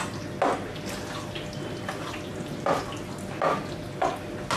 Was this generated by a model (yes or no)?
no